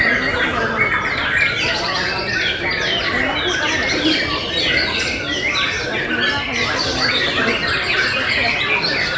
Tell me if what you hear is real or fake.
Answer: real